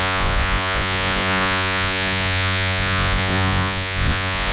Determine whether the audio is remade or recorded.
remade